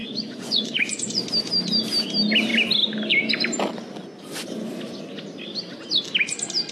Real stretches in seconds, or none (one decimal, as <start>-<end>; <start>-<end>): 1.2-6.7